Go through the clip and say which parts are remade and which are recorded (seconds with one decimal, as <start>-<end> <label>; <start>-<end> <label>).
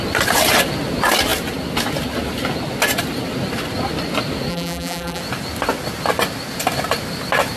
0.0-4.5 recorded; 4.5-5.2 remade; 5.2-7.6 recorded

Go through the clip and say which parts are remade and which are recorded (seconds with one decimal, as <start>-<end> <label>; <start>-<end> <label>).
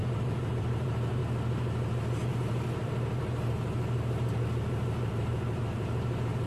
0.0-1.2 remade; 1.2-2.3 recorded; 2.3-6.5 remade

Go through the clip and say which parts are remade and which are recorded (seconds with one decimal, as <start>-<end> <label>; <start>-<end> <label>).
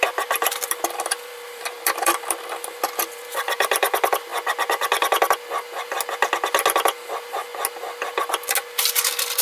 0.0-4.3 remade; 4.3-7.1 recorded; 7.1-7.5 remade; 7.5-9.4 recorded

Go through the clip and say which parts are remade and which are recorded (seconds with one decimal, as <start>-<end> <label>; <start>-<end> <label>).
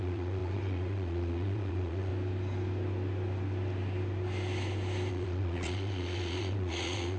0.0-2.1 remade; 2.1-5.1 recorded; 5.1-7.2 remade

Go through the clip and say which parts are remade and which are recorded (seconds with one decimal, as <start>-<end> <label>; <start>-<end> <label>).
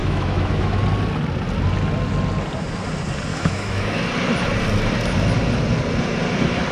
0.0-0.8 remade; 0.8-3.3 recorded; 3.3-4.0 remade; 4.0-6.7 recorded